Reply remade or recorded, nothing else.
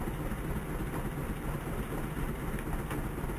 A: recorded